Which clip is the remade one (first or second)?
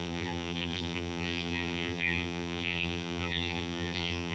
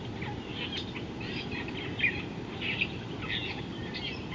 first